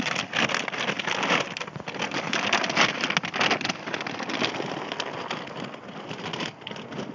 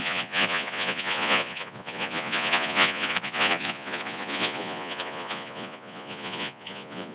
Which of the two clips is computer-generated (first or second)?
second